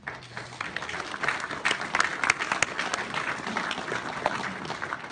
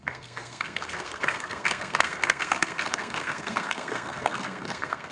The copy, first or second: second